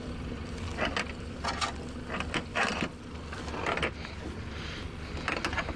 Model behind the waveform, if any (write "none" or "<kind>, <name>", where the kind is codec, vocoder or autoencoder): none